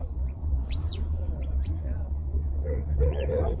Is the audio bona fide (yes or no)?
no